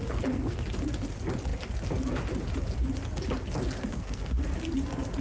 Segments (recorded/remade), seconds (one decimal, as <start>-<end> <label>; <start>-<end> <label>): 0.0-0.6 remade; 0.6-3.9 recorded; 3.9-4.4 remade; 4.4-5.2 recorded